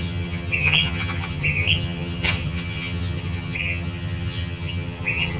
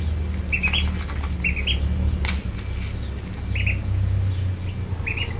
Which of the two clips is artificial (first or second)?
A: first